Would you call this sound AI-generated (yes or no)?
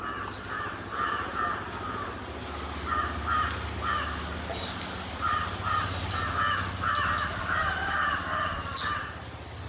no